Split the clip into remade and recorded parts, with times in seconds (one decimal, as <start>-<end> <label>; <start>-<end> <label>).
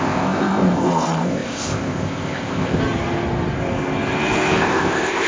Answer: 0.0-2.8 remade; 2.8-4.6 recorded; 4.6-5.3 remade